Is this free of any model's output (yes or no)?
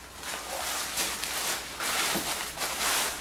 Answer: yes